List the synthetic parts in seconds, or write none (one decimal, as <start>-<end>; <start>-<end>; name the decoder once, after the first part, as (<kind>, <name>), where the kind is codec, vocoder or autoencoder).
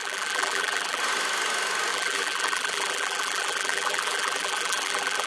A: 0.0-1.0 (vocoder, BigVGAN v2); 1.9-5.3